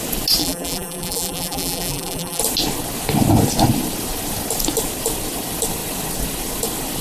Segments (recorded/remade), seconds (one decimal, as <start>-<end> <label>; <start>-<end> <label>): 0.0-0.4 recorded; 0.4-2.4 remade; 2.4-7.0 recorded